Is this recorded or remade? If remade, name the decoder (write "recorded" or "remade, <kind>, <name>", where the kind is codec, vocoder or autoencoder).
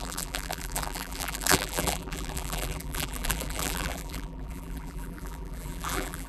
remade, vocoder, BigVGAN v2